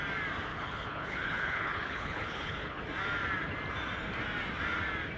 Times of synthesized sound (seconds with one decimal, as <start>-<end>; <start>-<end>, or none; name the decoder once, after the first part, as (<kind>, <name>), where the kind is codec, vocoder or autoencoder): 0.5-2.8 (codec, HILCodec)